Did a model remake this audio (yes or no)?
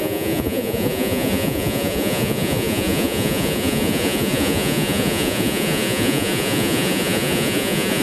yes